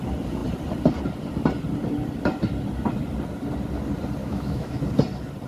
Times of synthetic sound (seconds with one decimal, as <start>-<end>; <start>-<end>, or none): 4.2-4.8